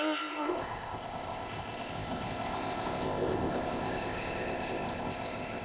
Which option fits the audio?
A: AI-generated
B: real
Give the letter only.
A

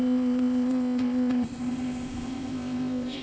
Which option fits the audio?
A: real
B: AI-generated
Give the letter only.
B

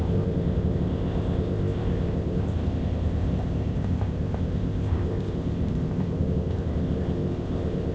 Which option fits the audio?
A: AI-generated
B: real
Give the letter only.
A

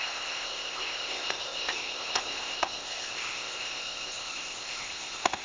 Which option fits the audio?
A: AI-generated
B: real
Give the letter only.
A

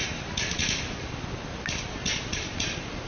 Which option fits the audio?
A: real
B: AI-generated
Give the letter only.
A